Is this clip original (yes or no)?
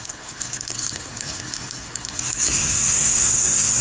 no